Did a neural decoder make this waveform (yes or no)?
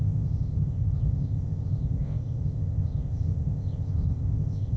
yes